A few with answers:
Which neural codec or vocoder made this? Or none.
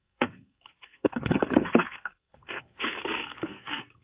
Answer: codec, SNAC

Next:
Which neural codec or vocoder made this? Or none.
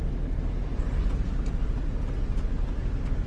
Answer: none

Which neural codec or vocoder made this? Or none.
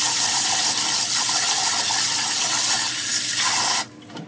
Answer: none